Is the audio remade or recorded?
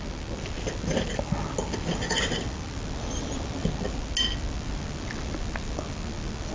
recorded